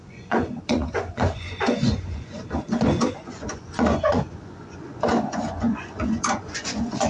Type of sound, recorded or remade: remade